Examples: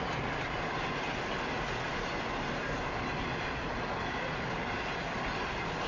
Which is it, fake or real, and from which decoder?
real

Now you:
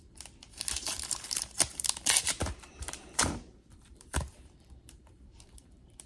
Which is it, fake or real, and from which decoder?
fake, vocoder, BigVGAN v2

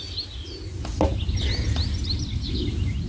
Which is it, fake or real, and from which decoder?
real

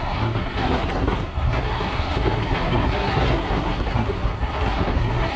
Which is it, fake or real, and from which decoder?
fake, codec, SNAC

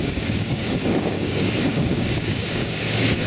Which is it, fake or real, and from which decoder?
fake, codec, DAC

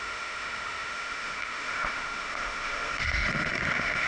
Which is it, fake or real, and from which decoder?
fake, autoencoder, DAC-VAE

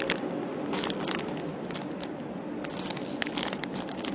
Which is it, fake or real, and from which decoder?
real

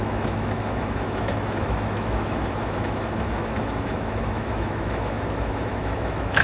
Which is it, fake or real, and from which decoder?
fake, autoencoder, DAC-VAE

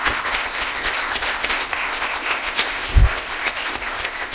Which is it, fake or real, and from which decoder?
fake, codec, ZipCodec